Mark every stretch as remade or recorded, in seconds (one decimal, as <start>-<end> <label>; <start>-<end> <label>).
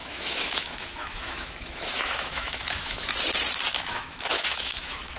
0.0-3.1 remade; 3.1-3.7 recorded; 3.7-5.2 remade